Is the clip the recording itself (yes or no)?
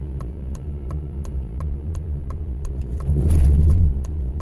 no